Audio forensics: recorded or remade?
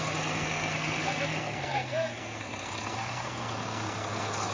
remade